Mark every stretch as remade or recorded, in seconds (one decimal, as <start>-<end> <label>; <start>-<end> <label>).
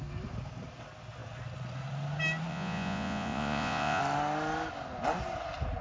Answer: 0.0-2.5 recorded; 2.5-4.0 remade; 4.0-5.8 recorded